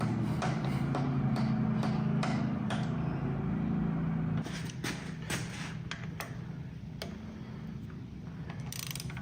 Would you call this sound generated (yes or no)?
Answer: no